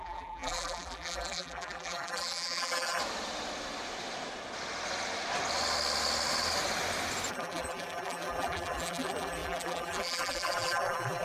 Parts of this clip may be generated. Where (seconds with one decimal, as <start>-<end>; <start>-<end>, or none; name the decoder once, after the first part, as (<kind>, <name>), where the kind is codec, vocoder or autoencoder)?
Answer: 0.0-3.0 (vocoder, BigVGAN v2); 7.3-11.2